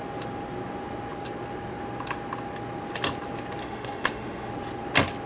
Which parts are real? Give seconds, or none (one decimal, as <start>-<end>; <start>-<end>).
0.0-3.6; 4.5-5.3

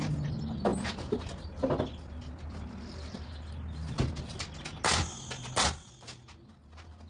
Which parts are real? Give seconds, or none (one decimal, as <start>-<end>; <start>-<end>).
0.0-7.1